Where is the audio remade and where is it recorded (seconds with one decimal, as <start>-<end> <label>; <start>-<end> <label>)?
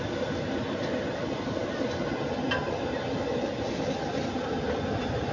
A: 0.0-5.3 recorded